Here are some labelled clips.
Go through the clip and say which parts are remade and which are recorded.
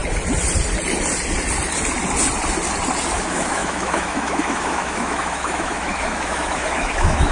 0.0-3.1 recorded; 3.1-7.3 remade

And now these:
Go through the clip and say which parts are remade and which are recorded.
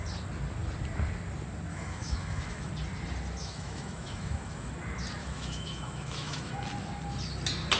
0.0-1.7 recorded; 1.7-2.7 remade; 2.7-3.4 recorded; 3.4-4.7 remade; 4.7-5.2 recorded; 5.2-6.5 remade; 6.5-7.8 recorded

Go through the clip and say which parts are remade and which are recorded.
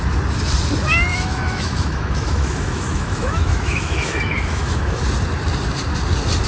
0.0-1.1 recorded; 1.1-5.0 remade; 5.0-6.5 recorded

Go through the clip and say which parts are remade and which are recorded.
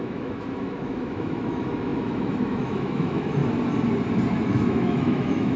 0.0-3.4 remade; 3.4-4.3 recorded; 4.3-5.6 remade